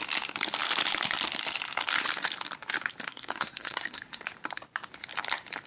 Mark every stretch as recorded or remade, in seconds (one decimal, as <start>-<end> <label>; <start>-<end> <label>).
0.0-3.1 recorded; 3.1-4.2 remade; 4.2-5.7 recorded